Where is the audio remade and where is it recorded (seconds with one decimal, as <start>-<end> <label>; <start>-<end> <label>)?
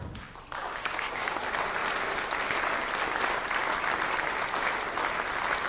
0.0-0.6 recorded; 0.6-1.4 remade; 1.4-5.7 recorded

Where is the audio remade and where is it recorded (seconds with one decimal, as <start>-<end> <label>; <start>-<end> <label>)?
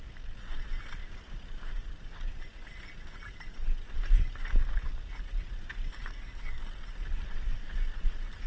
0.0-6.1 recorded; 6.1-6.6 remade; 6.6-8.5 recorded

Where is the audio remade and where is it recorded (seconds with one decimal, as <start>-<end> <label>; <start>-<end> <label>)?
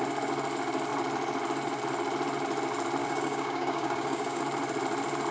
0.0-3.0 recorded; 3.0-4.4 remade; 4.4-5.3 recorded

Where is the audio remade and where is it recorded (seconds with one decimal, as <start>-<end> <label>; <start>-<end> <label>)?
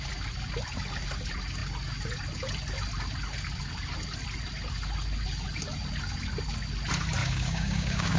0.0-7.2 recorded; 7.2-8.2 remade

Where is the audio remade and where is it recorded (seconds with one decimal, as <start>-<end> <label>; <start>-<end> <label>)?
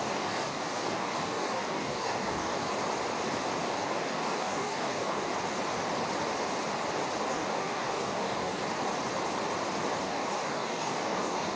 0.0-2.7 remade; 2.7-3.6 recorded; 3.6-5.3 remade; 5.3-7.3 recorded; 7.3-8.6 remade; 8.6-10.0 recorded; 10.0-11.6 remade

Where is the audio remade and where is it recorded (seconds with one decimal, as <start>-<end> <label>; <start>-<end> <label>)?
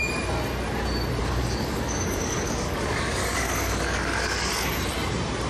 0.0-1.2 recorded; 1.2-4.5 remade; 4.5-5.5 recorded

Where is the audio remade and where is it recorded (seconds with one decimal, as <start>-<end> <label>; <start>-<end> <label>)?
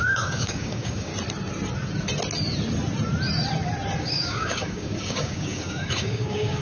0.0-1.1 remade; 1.1-4.0 recorded; 4.0-6.6 remade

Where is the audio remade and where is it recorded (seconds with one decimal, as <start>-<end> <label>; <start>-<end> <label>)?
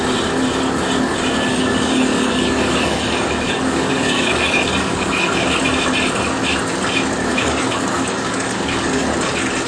0.0-1.5 recorded; 1.5-5.6 remade; 5.6-7.3 recorded; 7.3-9.0 remade; 9.0-9.7 recorded